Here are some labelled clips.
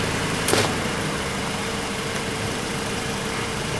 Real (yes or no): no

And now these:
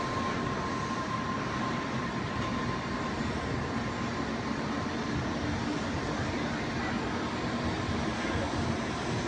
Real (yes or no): yes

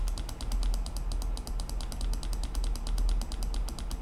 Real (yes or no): yes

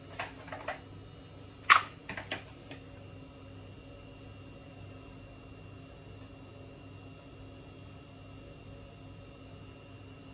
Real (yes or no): yes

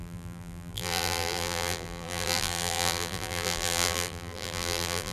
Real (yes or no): no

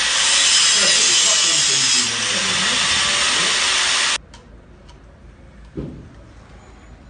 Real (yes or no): yes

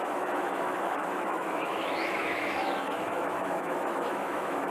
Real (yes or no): no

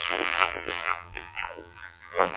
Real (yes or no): no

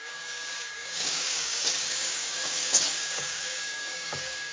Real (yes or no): no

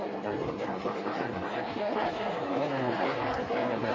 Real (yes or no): no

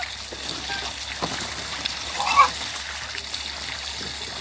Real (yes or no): yes